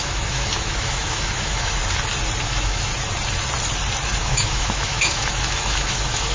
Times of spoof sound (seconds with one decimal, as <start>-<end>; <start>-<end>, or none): 0.0-1.8; 2.4-2.9; 4.2-6.3